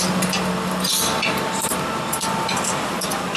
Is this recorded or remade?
recorded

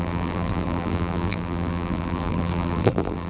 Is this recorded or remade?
remade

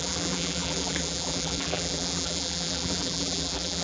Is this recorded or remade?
remade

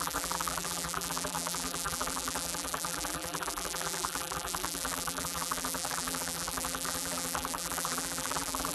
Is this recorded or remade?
remade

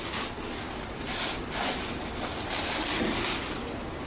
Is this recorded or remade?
recorded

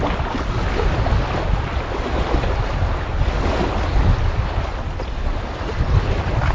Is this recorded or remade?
recorded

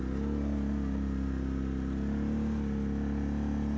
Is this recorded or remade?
recorded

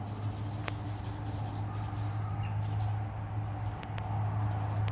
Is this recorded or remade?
recorded